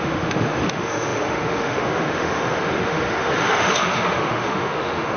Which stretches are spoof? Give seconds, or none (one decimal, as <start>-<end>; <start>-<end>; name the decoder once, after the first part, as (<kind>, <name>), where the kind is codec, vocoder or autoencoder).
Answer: 0.0-5.2 (autoencoder, DAC-VAE)